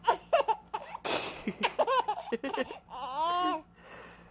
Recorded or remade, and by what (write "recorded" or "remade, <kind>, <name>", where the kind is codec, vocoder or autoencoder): recorded